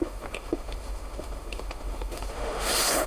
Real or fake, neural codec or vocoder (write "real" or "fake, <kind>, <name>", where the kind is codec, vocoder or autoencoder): fake, autoencoder, DAC-VAE